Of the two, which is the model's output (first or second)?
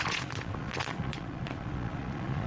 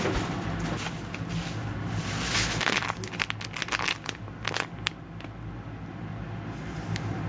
first